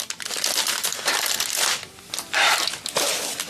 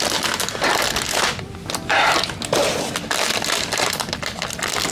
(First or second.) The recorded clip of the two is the second